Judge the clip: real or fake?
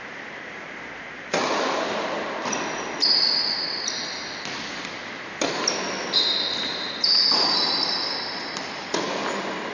real